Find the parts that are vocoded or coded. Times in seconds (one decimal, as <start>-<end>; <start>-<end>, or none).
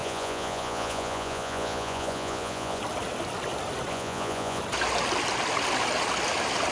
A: 0.0-2.8; 3.9-4.6